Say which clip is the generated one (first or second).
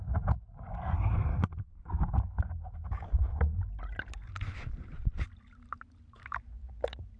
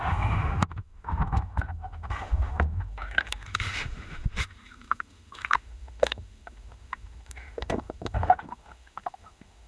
second